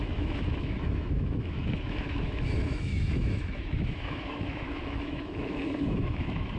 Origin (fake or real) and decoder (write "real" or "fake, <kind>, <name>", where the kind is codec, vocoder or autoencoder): fake, autoencoder, DAC-VAE